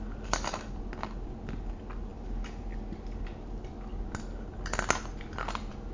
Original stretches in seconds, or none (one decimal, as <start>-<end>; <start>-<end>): 0.0-5.9